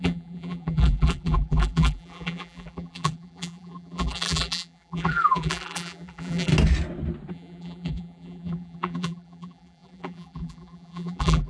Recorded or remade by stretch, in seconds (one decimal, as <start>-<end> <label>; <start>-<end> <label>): 0.0-6.5 remade; 6.5-7.3 recorded; 7.3-11.5 remade

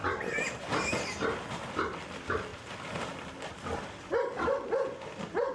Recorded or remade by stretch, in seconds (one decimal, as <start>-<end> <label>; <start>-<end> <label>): 0.0-1.7 recorded; 1.7-2.5 remade; 2.5-3.6 recorded; 3.6-5.5 remade

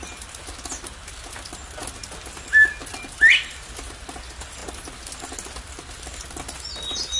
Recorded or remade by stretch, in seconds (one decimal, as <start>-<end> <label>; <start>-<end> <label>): 0.0-7.2 recorded

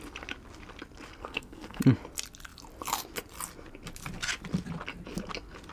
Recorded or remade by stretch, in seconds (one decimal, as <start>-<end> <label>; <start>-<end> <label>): 0.0-1.2 recorded; 1.2-1.8 remade; 1.8-5.7 recorded